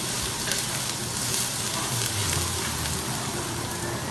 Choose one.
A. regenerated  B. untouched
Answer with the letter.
B